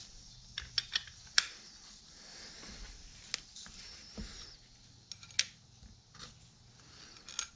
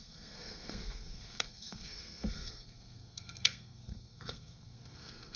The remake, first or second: second